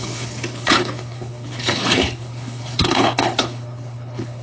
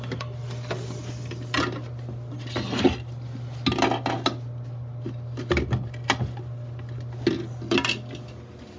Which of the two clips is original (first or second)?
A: second